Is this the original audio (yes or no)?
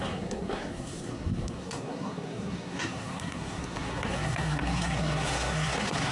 no